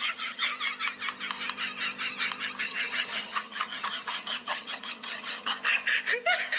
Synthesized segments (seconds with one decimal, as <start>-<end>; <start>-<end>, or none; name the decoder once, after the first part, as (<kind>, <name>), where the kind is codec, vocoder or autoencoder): 0.0-0.5 (vocoder, HiFi-GAN); 2.6-5.5